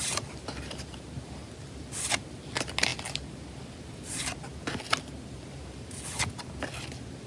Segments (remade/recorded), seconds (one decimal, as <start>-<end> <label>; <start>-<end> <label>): 0.0-7.3 recorded